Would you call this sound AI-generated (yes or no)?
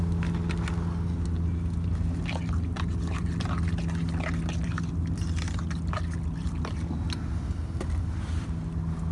no